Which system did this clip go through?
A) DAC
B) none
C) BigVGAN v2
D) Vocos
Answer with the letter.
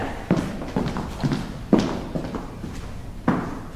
B